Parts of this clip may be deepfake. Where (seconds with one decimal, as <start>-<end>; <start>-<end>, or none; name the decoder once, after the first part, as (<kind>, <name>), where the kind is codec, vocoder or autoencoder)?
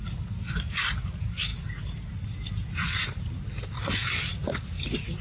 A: none